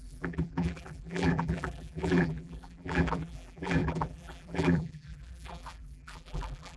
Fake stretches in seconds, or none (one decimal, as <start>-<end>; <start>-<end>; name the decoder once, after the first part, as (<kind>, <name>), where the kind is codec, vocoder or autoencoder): 0.0-6.8 (vocoder, BigVGAN v2)